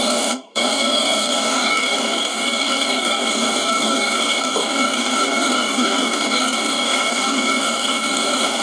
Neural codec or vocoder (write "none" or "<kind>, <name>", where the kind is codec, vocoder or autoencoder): codec, DAC